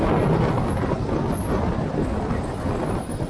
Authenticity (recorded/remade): remade